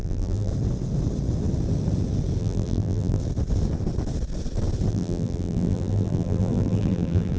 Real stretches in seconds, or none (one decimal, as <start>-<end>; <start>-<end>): 0.5-2.4; 3.2-4.9